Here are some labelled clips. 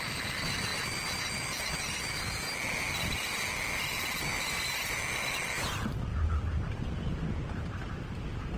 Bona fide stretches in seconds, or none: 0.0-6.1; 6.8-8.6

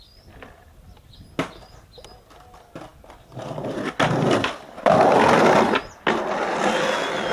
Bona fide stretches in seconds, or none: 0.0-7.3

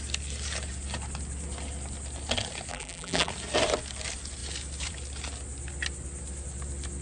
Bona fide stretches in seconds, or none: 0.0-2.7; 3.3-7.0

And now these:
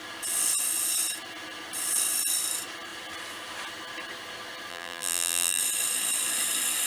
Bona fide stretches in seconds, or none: 0.0-4.7; 5.6-6.9

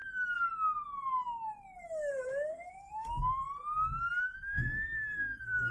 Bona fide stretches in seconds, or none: 0.0-2.5; 3.4-4.2

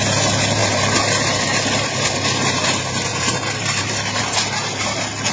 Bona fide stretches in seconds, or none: 0.0-0.6; 1.3-3.1; 4.2-5.3

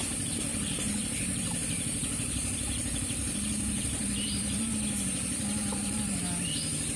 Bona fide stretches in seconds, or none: 0.0-0.5; 4.7-5.6; 6.2-7.0